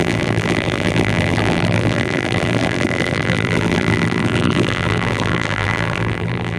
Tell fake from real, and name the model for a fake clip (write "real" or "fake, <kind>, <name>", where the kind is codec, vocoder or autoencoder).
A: fake, vocoder, BigVGAN v2